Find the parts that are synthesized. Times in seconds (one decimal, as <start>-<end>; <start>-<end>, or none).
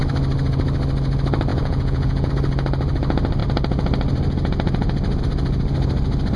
1.5-2.3